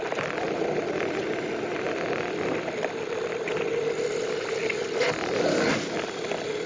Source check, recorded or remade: recorded